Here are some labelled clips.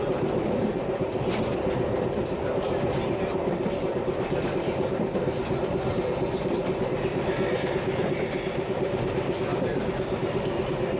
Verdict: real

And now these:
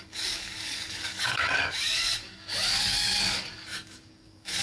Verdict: fake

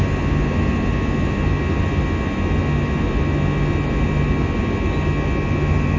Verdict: real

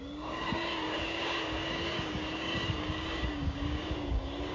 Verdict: fake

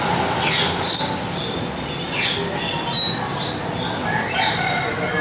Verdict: real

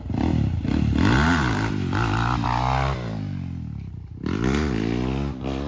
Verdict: real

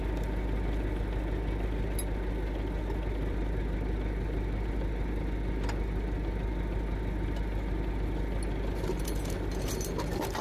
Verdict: real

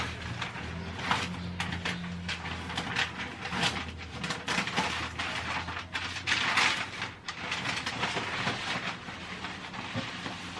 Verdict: real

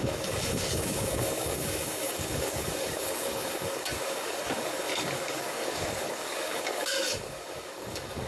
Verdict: fake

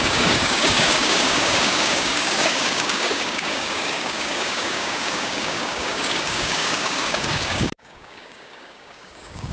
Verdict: fake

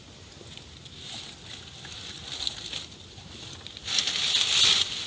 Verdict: real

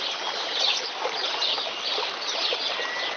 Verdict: real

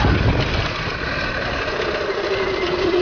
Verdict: real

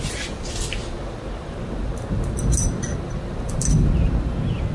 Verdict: real